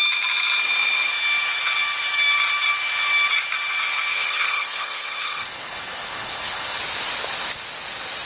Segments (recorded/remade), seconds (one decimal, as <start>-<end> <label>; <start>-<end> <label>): 0.0-4.1 recorded; 4.1-6.8 remade; 6.8-8.3 recorded